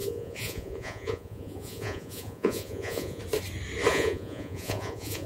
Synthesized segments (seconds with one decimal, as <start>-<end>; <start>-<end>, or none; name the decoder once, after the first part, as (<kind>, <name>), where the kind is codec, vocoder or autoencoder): 0.0-3.2 (vocoder, Vocos); 3.9-5.3